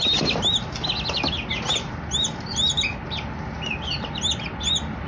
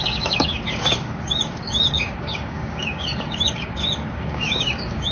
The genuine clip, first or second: first